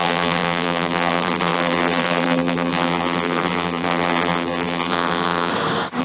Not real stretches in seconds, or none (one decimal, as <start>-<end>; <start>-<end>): 0.0-5.5